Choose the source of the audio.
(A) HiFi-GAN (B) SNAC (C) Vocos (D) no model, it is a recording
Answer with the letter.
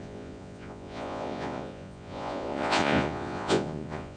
C